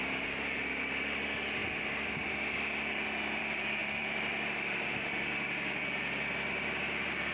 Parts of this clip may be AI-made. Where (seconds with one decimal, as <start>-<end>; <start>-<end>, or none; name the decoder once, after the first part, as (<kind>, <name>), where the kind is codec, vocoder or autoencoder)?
3.8-5.1 (vocoder, BigVGAN v2)